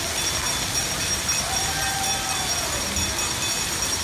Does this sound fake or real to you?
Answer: real